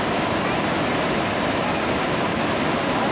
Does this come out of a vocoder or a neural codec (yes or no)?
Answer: no